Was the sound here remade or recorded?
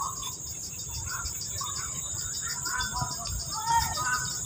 remade